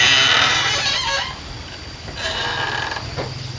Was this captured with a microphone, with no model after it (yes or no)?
yes